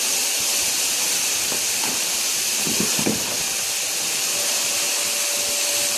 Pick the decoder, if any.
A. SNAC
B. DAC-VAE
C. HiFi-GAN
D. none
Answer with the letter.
D